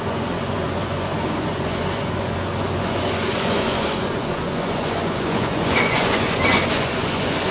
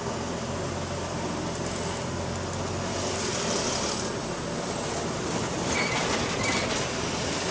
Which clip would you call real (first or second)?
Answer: second